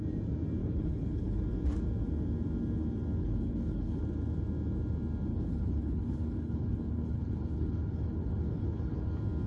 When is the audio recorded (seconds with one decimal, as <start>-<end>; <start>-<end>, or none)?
0.0-0.6; 1.4-3.2; 4.0-5.3; 9.1-9.5